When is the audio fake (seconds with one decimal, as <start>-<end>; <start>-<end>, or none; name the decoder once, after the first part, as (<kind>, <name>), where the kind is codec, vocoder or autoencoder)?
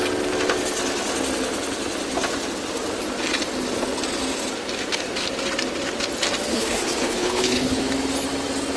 6.5-7.8 (codec, HILCodec)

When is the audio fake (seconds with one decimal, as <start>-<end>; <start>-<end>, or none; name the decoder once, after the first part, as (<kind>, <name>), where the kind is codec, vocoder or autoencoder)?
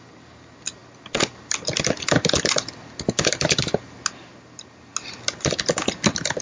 none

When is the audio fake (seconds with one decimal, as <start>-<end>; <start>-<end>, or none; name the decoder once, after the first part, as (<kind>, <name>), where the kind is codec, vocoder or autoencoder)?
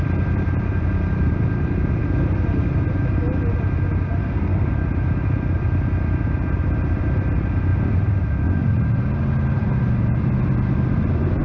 4.2-4.7 (codec, SNAC)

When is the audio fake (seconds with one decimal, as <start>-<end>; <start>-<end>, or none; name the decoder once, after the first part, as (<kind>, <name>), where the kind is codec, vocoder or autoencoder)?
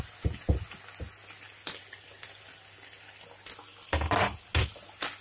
none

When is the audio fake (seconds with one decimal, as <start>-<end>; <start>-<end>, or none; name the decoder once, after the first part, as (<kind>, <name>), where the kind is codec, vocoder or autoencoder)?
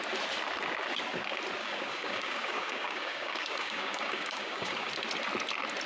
1.6-4.9 (codec, DAC)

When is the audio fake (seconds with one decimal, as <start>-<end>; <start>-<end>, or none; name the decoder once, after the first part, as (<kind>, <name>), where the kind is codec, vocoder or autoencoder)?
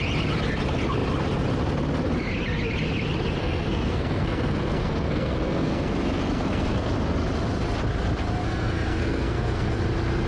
3.4-6.9 (codec, SNAC); 8.4-9.7